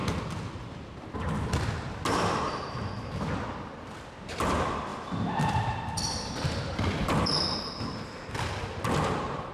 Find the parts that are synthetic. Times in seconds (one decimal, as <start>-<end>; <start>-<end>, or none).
4.9-9.5